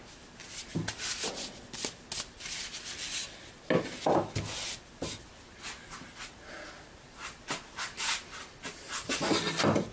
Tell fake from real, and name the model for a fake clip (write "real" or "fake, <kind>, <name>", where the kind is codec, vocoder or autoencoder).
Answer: real